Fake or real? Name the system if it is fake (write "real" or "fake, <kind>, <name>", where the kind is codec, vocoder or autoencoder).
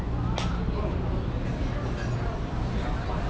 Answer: real